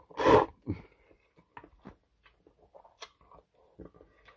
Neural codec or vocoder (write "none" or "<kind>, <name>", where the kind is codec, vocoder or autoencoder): none